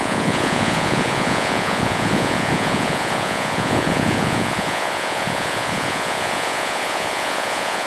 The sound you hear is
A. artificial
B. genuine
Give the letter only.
A